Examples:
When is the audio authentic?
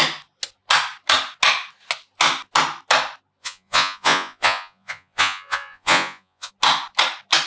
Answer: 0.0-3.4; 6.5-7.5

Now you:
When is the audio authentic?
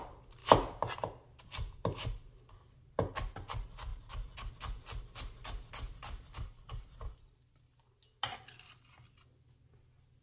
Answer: 0.0-3.9; 4.5-6.0; 7.6-10.2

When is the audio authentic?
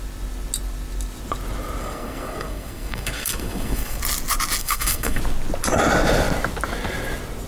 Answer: 0.0-1.8; 4.0-4.6; 5.2-7.5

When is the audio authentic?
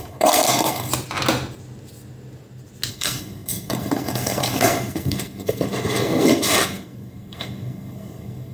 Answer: 0.9-2.9